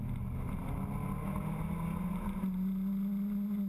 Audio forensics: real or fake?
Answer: real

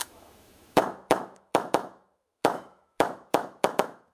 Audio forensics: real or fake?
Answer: fake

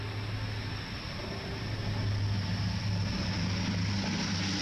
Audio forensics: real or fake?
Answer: real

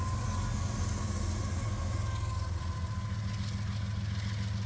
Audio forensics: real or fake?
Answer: real